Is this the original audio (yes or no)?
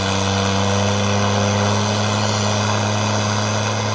yes